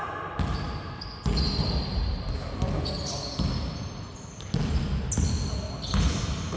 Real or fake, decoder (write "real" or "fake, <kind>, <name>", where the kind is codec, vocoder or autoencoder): real